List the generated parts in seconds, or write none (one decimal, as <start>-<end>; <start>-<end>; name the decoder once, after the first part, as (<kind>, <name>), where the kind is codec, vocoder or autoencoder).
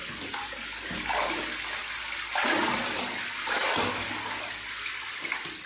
none